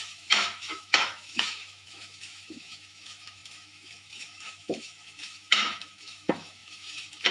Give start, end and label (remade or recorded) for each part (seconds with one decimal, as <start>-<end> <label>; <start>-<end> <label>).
0.0-7.3 remade